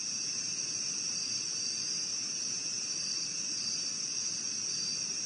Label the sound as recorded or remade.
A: recorded